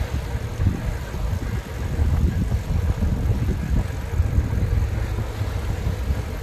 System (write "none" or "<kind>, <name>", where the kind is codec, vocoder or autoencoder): none